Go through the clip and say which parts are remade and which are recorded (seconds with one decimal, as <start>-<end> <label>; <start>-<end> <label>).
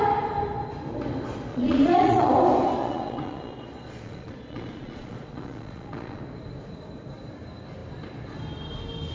0.0-1.5 recorded; 1.5-2.3 remade; 2.3-2.8 recorded; 2.8-6.2 remade; 6.2-9.1 recorded